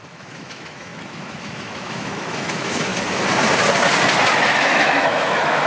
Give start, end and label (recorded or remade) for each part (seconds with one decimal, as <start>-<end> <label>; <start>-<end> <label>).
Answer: 0.0-2.9 remade; 2.9-4.4 recorded; 4.4-5.7 remade